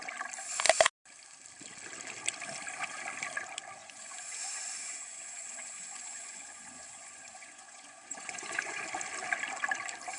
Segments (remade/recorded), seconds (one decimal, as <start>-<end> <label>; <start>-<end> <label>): 0.0-3.8 recorded; 3.8-8.8 remade; 8.8-10.2 recorded